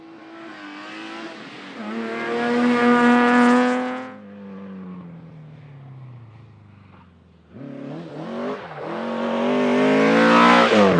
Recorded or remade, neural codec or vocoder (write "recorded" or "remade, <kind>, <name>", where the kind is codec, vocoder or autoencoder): recorded